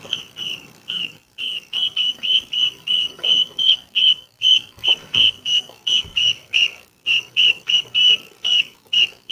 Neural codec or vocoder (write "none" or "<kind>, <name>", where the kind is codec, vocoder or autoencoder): codec, SNAC